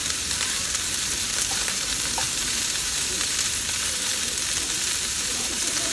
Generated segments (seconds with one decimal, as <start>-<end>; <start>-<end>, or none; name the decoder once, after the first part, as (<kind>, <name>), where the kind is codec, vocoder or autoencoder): 0.0-4.1 (vocoder, BigVGAN v2); 4.8-5.9